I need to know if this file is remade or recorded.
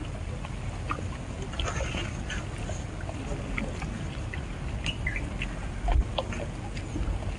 recorded